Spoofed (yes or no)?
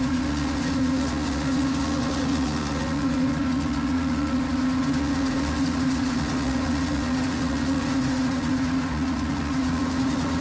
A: yes